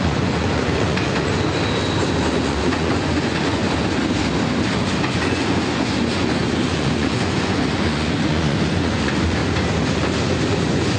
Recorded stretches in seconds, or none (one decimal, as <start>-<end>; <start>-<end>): 1.3-2.3; 3.6-5.0; 9.4-10.5